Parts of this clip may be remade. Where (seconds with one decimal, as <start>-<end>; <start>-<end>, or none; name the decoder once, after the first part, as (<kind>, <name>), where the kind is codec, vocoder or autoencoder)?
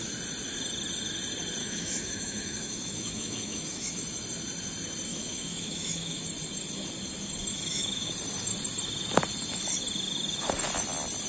1.6-3.9 (autoencoder, DAC-VAE); 5.1-6.2; 7.5-8.1